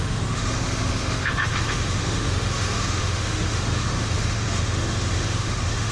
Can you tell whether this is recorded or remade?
remade